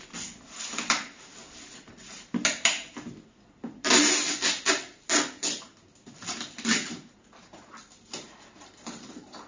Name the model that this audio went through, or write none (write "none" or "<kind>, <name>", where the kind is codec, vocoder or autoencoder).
none